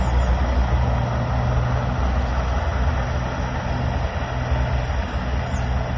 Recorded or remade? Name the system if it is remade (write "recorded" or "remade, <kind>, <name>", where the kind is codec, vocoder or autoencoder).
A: recorded